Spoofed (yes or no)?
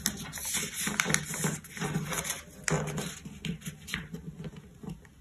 no